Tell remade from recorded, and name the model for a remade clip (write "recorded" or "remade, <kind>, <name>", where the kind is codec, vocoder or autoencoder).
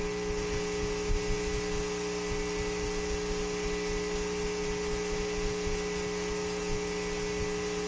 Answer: recorded